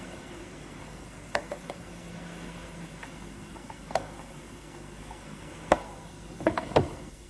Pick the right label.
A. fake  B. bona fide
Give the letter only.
A